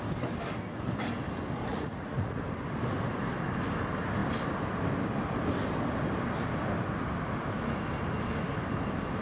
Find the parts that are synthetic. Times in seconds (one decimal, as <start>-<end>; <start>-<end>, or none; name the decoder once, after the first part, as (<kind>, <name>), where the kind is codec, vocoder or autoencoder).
1.7-2.4 (vocoder, Vocos)